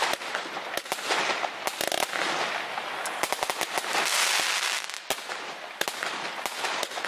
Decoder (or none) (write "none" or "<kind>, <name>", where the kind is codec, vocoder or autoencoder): none